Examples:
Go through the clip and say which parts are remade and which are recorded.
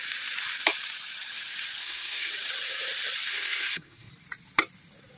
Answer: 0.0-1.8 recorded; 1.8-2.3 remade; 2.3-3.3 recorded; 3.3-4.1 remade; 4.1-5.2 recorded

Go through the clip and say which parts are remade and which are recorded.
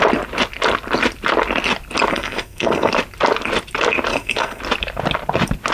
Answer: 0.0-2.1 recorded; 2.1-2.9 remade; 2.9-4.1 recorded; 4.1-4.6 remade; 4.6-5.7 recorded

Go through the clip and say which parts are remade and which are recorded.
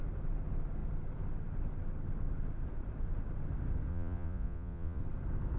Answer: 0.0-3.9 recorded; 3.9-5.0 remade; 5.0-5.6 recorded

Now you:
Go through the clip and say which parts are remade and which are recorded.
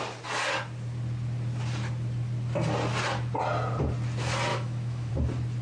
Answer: 0.0-4.5 recorded; 4.5-5.1 remade; 5.1-5.6 recorded